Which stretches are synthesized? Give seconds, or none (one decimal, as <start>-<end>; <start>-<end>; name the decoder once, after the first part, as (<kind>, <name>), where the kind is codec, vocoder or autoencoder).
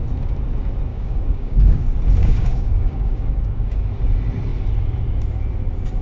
0.9-1.8 (codec, DAC); 2.2-3.9